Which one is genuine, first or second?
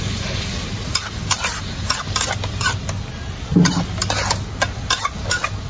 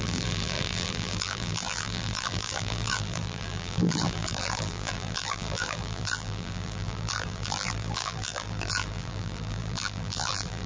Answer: first